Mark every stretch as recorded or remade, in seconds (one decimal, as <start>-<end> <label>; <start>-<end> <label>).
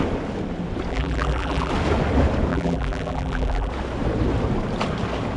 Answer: 0.0-0.9 recorded; 0.9-1.7 remade; 1.7-2.5 recorded; 2.5-3.7 remade; 3.7-5.4 recorded